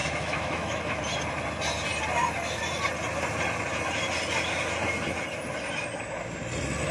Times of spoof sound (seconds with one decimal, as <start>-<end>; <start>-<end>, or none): 0.0-1.0